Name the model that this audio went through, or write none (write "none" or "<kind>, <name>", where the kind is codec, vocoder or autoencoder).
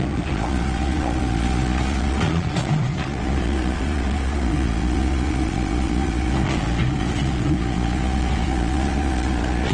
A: vocoder, Vocos